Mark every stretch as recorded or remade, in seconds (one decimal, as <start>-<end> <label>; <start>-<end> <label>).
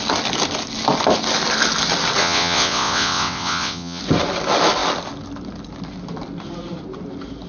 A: 0.0-2.2 recorded; 2.2-4.0 remade; 4.0-7.5 recorded